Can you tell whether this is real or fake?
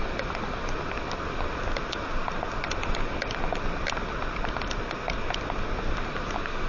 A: real